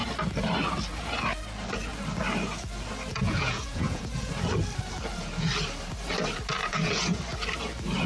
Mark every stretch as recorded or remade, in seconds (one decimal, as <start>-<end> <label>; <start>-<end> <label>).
0.0-3.1 recorded; 3.1-4.3 remade; 4.3-6.6 recorded; 6.6-7.2 remade; 7.2-8.1 recorded